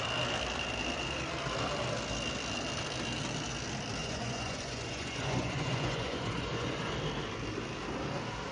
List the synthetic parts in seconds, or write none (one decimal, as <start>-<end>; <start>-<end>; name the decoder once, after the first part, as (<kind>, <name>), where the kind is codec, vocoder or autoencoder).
4.0-6.9 (vocoder, Vocos)